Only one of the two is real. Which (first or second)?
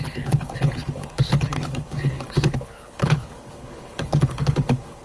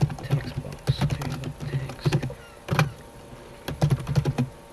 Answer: second